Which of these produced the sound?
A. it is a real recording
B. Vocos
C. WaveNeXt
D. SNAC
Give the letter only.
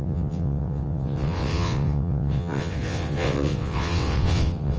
C